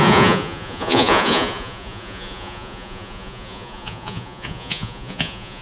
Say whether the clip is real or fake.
fake